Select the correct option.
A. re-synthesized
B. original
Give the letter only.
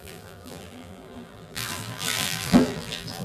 A